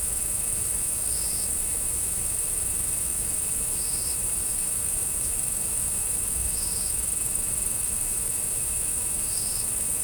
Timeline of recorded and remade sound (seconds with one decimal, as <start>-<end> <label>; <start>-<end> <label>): 0.0-10.0 remade